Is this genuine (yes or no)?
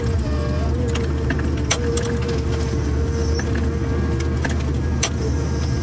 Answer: yes